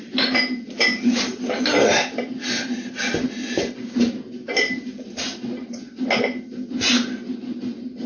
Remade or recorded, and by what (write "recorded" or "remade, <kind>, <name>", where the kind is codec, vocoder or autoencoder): recorded